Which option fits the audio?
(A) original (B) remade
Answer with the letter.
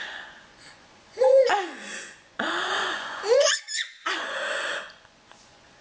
B